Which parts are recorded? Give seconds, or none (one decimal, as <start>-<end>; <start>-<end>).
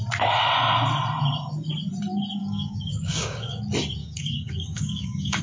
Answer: 0.0-2.4; 3.6-4.0